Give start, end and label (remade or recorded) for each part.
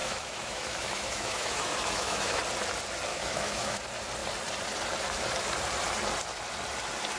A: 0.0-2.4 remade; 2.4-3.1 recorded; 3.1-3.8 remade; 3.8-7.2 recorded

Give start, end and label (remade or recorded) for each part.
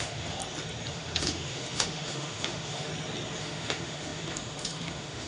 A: 0.0-0.4 remade; 0.4-0.9 recorded; 0.9-2.9 remade; 2.9-3.4 recorded; 3.4-5.3 remade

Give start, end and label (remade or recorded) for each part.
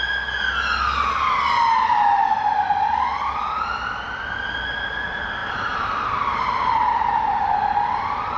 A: 0.0-5.4 recorded; 5.4-7.5 remade; 7.5-8.4 recorded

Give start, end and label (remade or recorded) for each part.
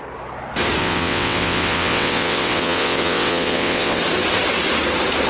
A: 0.0-0.8 recorded; 0.8-4.0 remade; 4.0-5.3 recorded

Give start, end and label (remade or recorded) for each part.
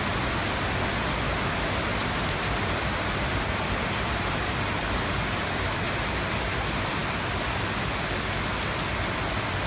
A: 0.0-1.9 recorded; 1.9-5.7 remade; 5.7-9.7 recorded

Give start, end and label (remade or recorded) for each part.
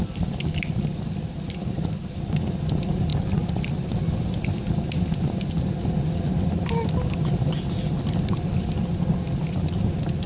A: 0.0-3.1 remade; 3.1-6.6 recorded; 6.6-10.3 remade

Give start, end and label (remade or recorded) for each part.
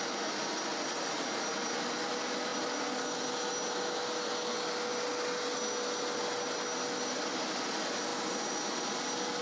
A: 0.0-9.4 recorded